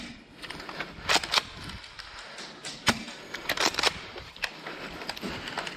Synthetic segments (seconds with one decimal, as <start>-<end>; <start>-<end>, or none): 2.6-4.3